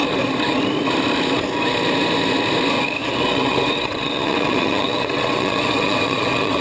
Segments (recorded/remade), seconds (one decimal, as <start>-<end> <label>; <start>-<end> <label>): 0.0-3.0 recorded; 3.0-6.6 remade